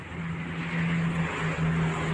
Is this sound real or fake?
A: real